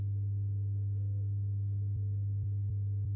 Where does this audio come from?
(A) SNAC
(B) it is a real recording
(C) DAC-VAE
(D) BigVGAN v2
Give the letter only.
B